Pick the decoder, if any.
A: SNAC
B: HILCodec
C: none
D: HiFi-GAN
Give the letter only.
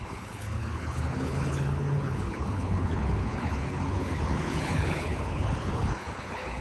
B